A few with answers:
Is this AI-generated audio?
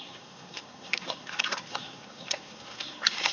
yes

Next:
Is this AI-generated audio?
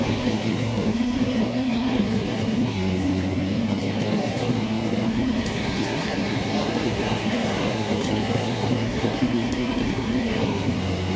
yes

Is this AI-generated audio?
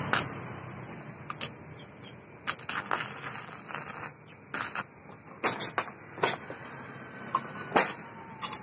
no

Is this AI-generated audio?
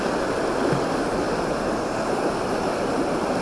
no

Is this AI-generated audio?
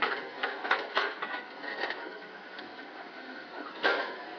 yes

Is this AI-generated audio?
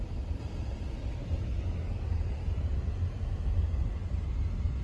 no